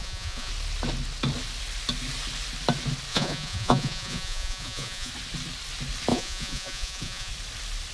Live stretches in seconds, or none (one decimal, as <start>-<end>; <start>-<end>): 0.5-3.1; 5.1-6.1; 7.3-7.9